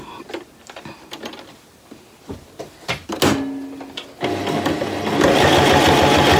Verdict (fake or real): real